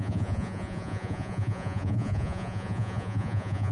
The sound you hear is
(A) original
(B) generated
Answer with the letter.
B